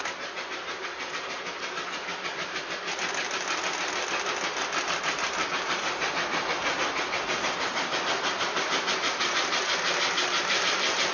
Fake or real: real